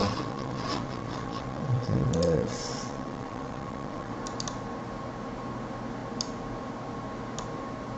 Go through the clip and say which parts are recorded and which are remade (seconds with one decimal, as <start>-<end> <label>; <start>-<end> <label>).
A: 0.0-4.1 remade; 4.1-8.0 recorded